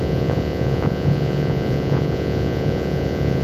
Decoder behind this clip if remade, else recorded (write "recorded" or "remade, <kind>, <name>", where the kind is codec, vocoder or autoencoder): remade, vocoder, Vocos